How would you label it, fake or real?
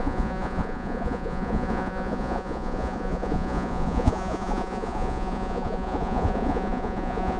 fake